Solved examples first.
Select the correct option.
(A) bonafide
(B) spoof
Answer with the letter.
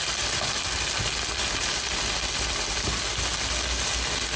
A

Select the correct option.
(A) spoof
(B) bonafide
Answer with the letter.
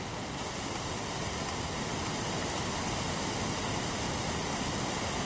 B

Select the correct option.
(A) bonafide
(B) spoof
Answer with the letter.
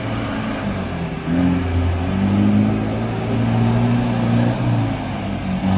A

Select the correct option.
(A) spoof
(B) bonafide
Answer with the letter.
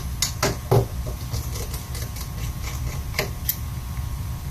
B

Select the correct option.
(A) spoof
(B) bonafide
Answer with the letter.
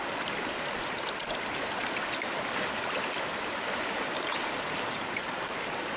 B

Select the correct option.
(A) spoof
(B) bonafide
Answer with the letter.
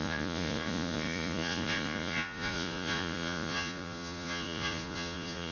A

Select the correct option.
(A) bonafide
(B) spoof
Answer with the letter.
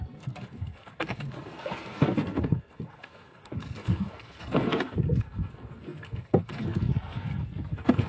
B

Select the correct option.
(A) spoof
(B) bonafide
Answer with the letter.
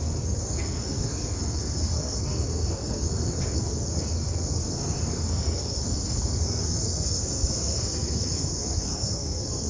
A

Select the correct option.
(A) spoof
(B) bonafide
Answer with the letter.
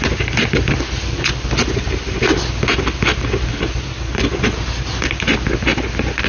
B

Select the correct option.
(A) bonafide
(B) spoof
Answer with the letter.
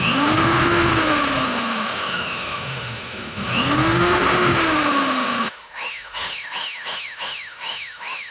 B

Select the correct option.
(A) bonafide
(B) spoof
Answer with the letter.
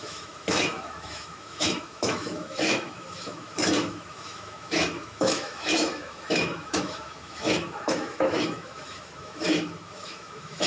B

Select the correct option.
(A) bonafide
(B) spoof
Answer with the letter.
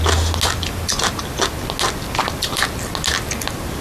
A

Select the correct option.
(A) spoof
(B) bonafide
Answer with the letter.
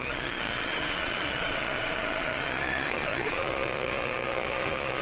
A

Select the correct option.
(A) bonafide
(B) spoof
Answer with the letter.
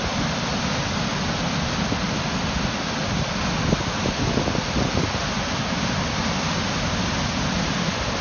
A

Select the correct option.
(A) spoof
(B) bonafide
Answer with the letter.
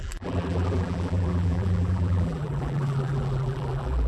A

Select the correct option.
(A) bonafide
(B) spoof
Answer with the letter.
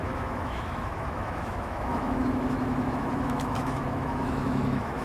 B